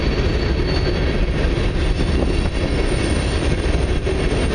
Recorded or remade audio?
recorded